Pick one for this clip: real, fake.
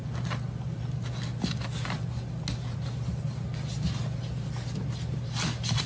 real